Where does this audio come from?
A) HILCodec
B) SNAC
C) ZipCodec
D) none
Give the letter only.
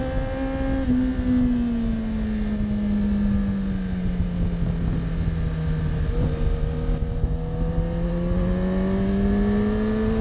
D